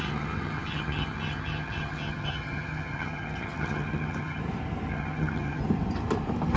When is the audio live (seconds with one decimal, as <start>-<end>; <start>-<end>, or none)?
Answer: 4.4-4.9; 5.6-6.6

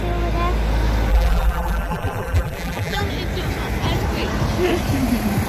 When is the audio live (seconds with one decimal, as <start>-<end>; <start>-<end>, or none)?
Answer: 0.0-1.1; 3.0-5.5

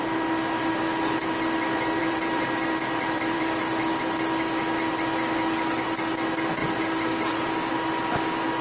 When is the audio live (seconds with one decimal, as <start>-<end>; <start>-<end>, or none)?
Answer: 0.0-2.0; 3.6-8.6

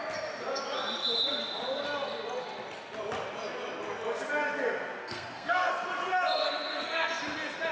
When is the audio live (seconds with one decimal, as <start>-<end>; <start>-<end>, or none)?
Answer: 0.0-5.0; 5.7-6.4; 7.2-7.7

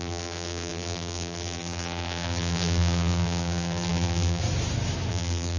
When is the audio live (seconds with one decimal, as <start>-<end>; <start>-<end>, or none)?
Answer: 4.4-5.1